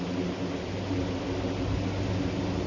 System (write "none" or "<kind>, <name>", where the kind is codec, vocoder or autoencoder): none